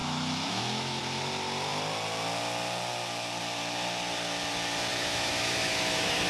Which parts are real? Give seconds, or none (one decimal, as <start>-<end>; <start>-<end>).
1.0-4.9